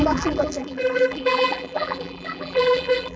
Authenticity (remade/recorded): remade